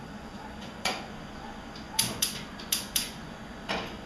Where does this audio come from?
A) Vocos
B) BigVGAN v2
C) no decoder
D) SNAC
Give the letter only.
A